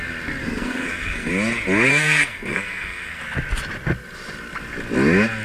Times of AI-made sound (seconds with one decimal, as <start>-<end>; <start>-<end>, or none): 0.4-1.3; 1.9-3.2